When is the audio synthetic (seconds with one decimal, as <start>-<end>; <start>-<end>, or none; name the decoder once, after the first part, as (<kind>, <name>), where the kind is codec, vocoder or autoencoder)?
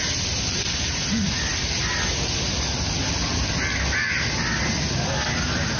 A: none